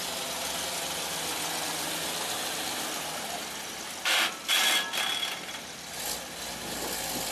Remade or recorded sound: recorded